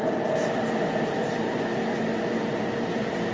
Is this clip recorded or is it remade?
remade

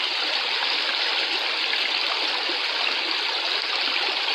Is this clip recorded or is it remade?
recorded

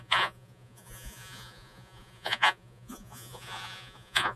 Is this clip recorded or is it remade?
remade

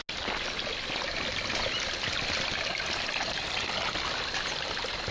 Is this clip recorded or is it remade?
recorded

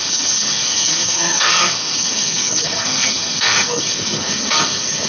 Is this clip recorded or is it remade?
remade